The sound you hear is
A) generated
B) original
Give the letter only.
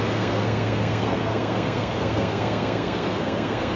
A